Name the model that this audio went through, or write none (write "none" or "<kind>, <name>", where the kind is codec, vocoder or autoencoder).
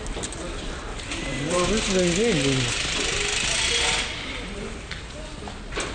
none